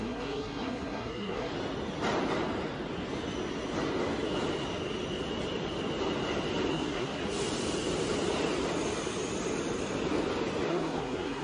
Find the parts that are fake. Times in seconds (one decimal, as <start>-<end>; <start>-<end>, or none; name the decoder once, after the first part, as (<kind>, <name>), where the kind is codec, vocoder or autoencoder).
0.0-1.5 (codec, SNAC); 6.7-7.2; 10.7-11.4